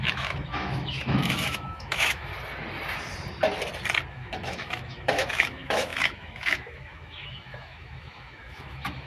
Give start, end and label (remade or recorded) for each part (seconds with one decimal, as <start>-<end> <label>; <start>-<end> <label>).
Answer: 0.0-2.3 remade; 2.3-4.1 recorded; 4.1-9.1 remade